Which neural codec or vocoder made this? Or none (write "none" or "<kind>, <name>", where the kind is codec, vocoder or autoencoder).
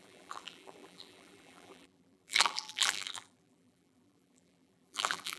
vocoder, BigVGAN v2